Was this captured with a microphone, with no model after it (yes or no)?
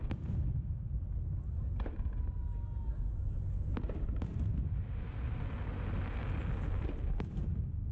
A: yes